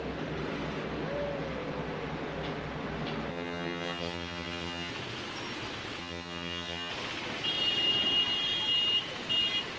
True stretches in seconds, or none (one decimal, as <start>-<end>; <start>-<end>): 0.0-3.3; 4.9-6.0; 6.9-9.8